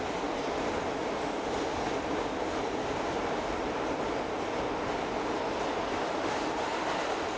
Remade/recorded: recorded